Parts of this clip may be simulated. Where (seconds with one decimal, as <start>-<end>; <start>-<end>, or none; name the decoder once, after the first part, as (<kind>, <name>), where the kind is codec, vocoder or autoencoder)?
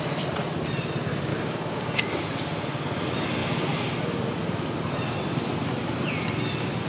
1.3-2.0 (codec, DAC)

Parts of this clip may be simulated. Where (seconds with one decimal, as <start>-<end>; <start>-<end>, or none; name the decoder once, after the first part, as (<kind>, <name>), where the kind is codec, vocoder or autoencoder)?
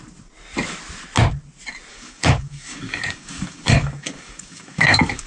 1.9-5.3 (codec, DAC)